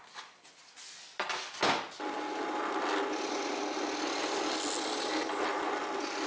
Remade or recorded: recorded